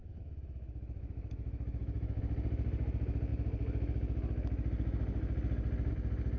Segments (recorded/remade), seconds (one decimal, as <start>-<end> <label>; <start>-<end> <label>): 0.0-2.2 remade; 2.2-6.4 recorded